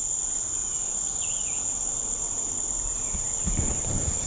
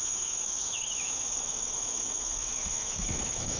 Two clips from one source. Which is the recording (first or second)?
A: first